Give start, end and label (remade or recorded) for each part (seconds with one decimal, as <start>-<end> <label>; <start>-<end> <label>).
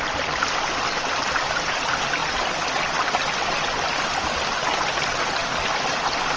0.0-6.4 recorded